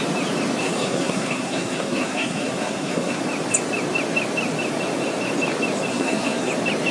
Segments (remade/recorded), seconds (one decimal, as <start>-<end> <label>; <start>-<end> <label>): 0.0-0.6 recorded; 0.6-3.2 remade; 3.2-5.9 recorded; 5.9-6.5 remade; 6.5-6.9 recorded